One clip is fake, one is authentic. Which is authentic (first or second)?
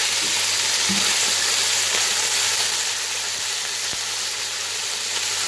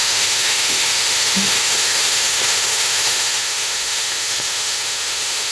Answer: first